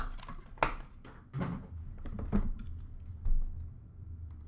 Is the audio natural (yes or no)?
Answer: yes